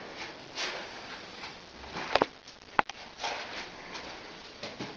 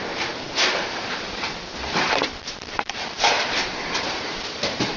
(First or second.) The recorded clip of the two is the first